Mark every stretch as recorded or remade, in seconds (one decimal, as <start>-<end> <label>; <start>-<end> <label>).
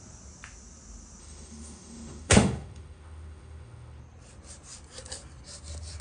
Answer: 0.0-1.2 recorded; 1.2-4.0 remade; 4.0-6.0 recorded